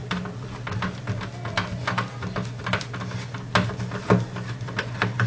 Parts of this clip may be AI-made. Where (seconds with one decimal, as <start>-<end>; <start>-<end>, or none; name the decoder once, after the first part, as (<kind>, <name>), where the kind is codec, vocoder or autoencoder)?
0.0-0.6 (vocoder, BigVGAN v2)